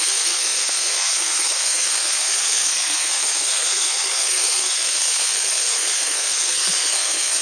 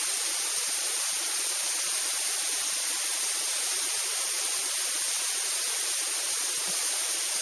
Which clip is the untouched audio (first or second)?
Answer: second